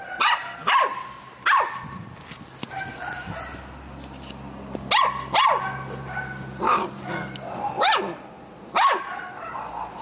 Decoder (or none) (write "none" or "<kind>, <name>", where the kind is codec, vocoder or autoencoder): none